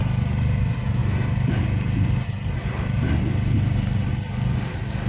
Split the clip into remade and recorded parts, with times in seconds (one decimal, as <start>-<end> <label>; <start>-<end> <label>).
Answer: 0.0-5.1 recorded